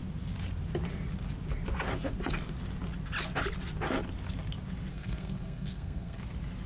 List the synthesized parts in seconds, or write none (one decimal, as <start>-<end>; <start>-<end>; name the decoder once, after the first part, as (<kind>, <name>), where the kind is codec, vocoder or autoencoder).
4.9-6.2 (codec, SNAC)

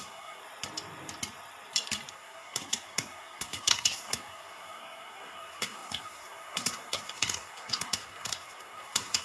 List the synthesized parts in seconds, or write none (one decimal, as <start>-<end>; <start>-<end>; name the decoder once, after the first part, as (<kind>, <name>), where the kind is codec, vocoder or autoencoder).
0.0-0.4 (codec, SNAC); 2.1-9.2

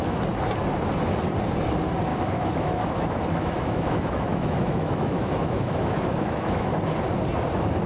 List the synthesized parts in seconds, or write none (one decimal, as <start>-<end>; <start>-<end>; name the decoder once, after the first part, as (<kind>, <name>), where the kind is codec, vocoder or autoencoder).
2.1-6.8 (autoencoder, DAC-VAE)

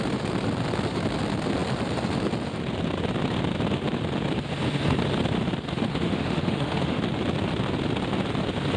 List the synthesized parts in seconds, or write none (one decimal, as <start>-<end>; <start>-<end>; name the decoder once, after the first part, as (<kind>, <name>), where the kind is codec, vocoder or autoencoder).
5.9-7.0 (autoencoder, DAC-VAE)

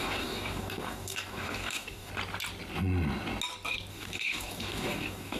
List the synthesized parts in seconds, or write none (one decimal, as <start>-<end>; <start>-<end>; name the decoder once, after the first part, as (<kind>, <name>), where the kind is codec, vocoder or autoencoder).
0.0-2.1 (codec, DAC); 3.9-5.4